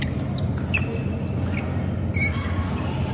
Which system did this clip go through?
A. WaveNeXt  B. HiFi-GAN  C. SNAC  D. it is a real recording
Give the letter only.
D